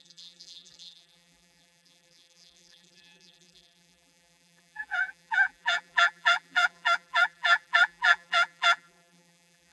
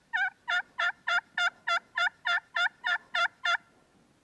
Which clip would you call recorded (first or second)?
second